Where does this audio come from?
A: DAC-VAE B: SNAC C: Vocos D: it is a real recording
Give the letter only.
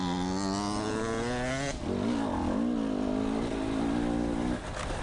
D